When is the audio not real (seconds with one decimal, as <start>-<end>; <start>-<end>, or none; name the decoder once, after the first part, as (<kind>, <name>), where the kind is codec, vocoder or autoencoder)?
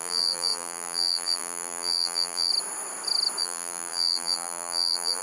0.0-2.5 (vocoder, BigVGAN v2); 3.4-5.2